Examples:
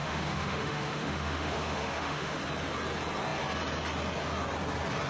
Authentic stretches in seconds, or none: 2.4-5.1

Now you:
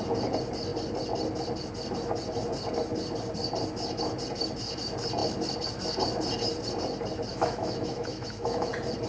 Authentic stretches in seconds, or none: 0.0-7.3; 8.7-9.1